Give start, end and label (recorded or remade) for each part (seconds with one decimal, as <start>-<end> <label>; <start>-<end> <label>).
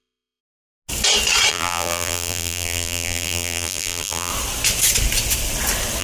0.0-0.4 remade; 0.4-1.5 recorded; 1.5-4.3 remade; 4.3-6.0 recorded